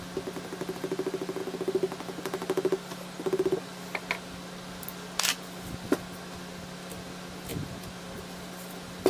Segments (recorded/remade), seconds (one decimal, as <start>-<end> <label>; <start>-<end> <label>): 0.0-9.1 recorded